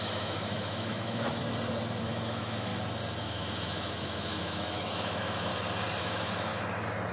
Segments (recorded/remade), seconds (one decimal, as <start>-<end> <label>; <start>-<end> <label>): 0.0-1.4 remade; 1.4-2.0 recorded; 2.0-2.7 remade; 2.7-3.2 recorded; 3.2-5.5 remade; 5.5-6.0 recorded; 6.0-6.5 remade; 6.5-7.1 recorded